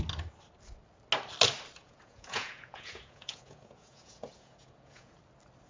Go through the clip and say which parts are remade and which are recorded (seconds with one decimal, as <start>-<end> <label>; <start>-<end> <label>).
0.0-1.8 recorded; 1.8-5.2 remade; 5.2-5.7 recorded